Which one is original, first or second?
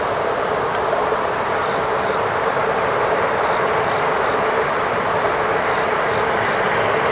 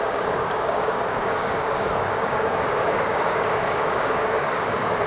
first